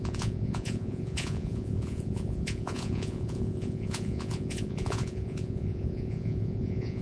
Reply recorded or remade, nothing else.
remade